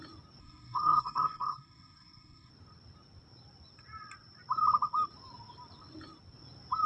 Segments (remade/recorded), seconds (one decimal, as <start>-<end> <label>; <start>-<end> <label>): 0.0-0.4 recorded; 0.4-2.5 remade; 2.5-6.9 recorded